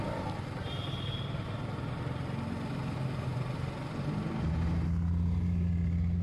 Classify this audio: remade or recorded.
recorded